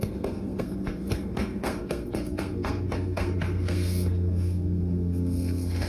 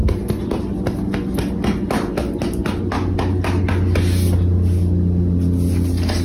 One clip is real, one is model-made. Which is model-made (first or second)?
first